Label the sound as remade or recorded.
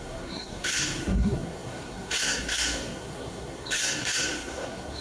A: remade